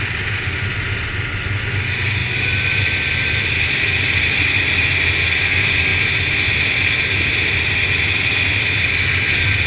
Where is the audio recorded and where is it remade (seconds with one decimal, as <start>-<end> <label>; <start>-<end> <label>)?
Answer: 0.0-9.7 recorded